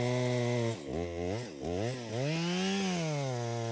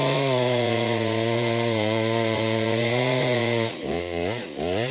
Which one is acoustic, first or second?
first